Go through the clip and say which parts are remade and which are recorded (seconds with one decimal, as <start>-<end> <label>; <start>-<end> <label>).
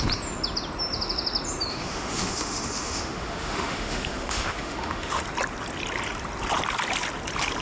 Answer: 0.0-1.7 recorded; 1.7-5.2 remade; 5.2-7.6 recorded